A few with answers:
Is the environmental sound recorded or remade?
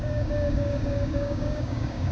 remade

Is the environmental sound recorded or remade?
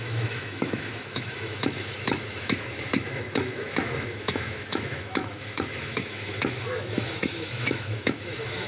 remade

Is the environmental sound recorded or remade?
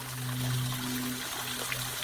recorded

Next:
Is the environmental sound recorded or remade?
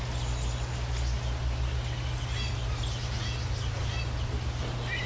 recorded